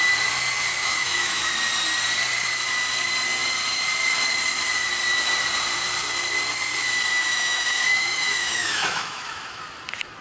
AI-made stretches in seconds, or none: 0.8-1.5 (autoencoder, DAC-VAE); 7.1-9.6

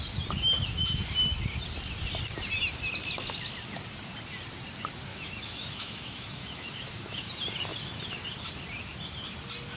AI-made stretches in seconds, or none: 5.1-7.3 (autoencoder, DAC-VAE)

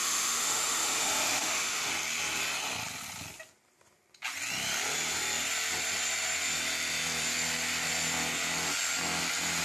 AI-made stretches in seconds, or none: 0.0-1.9 (autoencoder, DAC-VAE)

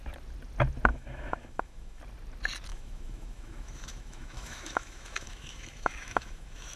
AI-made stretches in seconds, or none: 0.9-2.0 (autoencoder, DAC-VAE); 2.7-6.8